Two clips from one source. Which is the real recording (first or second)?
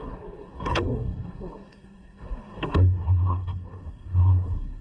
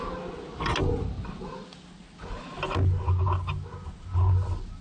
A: second